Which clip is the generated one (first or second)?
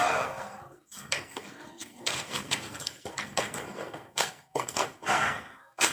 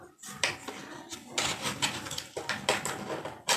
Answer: first